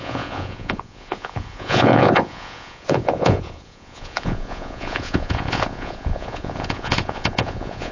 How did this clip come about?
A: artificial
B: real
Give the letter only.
A